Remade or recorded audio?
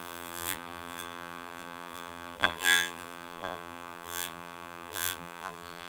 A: remade